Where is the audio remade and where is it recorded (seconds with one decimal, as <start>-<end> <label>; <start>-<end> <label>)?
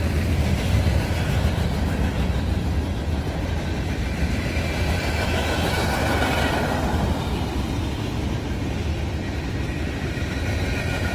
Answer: 0.0-6.0 recorded; 6.0-6.8 remade; 6.8-9.7 recorded; 9.7-10.5 remade; 10.5-11.1 recorded